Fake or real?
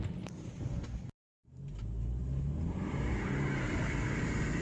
real